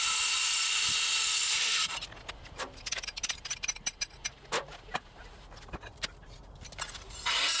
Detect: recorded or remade recorded